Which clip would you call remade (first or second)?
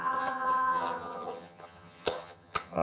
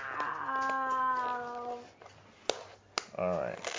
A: first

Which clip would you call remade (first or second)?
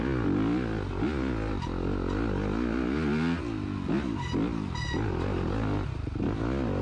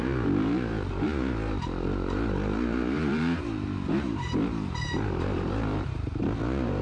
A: second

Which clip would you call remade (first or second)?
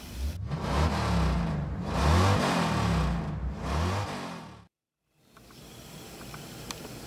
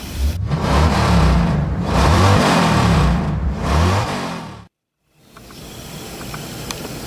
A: second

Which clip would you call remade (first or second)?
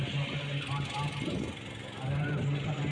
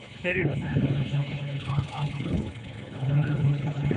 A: second